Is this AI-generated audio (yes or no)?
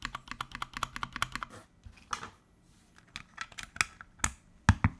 no